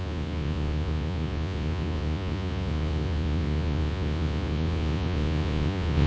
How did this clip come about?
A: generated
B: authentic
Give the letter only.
A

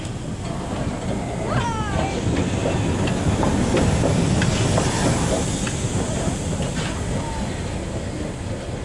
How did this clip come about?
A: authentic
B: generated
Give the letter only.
A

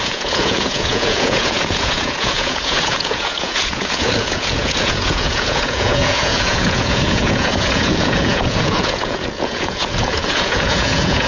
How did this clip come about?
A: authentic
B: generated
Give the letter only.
B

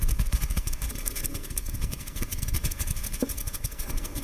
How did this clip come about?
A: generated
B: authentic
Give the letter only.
A